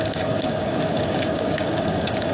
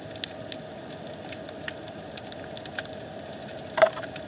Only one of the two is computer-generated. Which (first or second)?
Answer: first